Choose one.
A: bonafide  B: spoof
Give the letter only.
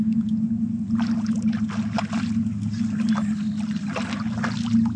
A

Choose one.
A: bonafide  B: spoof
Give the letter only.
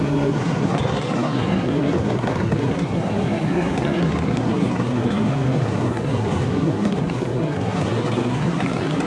B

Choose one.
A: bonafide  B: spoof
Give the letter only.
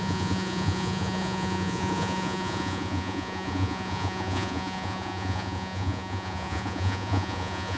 B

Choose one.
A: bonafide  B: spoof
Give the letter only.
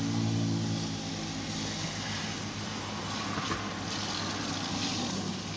A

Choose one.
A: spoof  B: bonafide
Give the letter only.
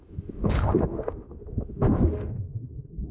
A